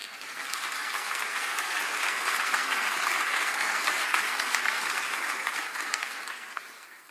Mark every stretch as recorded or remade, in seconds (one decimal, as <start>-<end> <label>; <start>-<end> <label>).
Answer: 0.0-7.1 remade